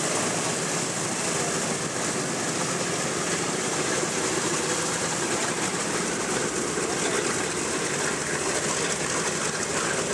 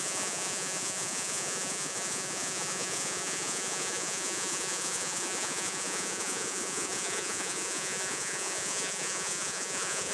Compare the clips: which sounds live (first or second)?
first